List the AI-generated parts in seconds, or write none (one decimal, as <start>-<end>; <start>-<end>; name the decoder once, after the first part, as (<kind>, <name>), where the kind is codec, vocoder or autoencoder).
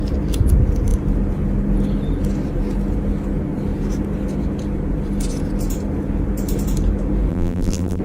7.3-8.0 (vocoder, BigVGAN v2)